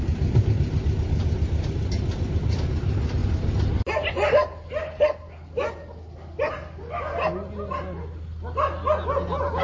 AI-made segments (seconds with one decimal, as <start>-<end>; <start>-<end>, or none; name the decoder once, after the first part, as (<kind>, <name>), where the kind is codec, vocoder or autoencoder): none